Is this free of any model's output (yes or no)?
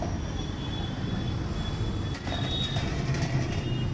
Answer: yes